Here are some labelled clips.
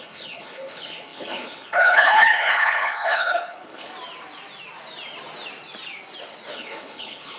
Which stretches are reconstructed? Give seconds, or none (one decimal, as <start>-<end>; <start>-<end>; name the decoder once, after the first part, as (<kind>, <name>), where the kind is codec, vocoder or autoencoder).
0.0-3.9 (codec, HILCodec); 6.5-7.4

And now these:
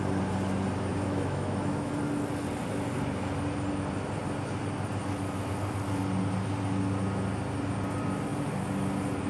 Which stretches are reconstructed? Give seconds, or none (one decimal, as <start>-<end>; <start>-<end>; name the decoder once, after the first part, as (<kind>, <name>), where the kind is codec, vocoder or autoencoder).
0.9-1.9 (autoencoder, DAC-VAE)

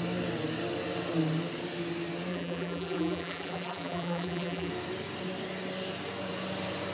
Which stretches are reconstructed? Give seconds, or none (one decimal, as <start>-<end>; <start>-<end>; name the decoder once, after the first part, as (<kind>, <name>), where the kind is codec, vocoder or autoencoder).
2.3-4.7 (vocoder, BigVGAN v2)